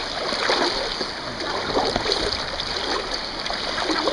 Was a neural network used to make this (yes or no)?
no